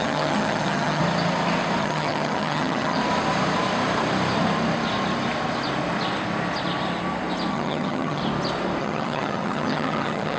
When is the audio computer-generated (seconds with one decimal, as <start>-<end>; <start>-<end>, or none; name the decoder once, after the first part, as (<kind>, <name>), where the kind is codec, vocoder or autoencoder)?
0.0-1.0 (vocoder, HiFi-GAN); 1.8-3.0; 7.5-8.2; 8.8-10.4

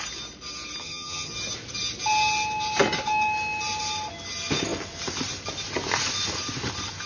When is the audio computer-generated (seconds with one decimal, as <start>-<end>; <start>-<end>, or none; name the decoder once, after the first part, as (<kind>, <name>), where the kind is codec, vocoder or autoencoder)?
0.8-1.3 (vocoder, HiFi-GAN)

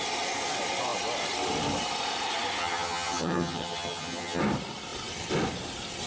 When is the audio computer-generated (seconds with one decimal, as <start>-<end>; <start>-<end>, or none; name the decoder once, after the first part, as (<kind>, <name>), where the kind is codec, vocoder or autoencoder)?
2.6-4.4 (vocoder, HiFi-GAN)

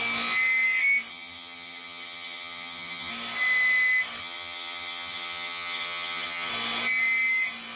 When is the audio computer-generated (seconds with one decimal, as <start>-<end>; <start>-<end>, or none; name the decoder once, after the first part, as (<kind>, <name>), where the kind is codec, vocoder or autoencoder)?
1.1-3.1 (vocoder, HiFi-GAN); 4.2-6.5

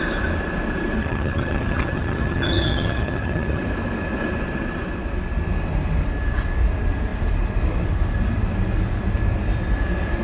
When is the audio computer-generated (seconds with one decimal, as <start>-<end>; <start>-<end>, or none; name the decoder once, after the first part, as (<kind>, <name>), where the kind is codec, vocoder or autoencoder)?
1.0-3.6 (vocoder, HiFi-GAN)

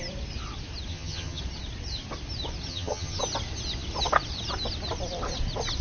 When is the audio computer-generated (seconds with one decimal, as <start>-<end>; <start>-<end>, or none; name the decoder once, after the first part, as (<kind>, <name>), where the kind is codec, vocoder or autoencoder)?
0.9-1.4 (vocoder, HiFi-GAN); 2.7-3.2